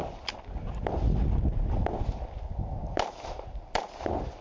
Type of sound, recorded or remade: recorded